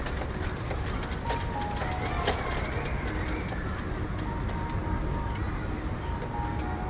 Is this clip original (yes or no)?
yes